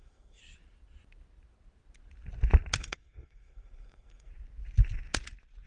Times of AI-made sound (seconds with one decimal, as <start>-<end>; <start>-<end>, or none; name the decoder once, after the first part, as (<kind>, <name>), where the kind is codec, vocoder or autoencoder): 0.0-0.4 (codec, SNAC); 2.8-4.3